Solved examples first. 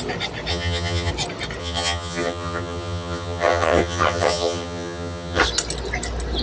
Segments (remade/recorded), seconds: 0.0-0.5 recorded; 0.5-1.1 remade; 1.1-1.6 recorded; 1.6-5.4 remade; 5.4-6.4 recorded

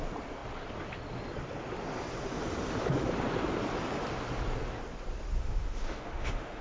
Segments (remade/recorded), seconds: 0.0-5.4 recorded; 5.4-6.6 remade

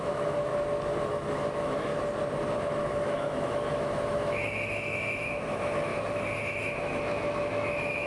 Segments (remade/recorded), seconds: 0.0-0.5 remade; 0.5-1.0 recorded; 1.0-1.9 remade; 1.9-2.6 recorded; 2.6-5.9 remade; 5.9-6.4 recorded; 6.4-8.1 remade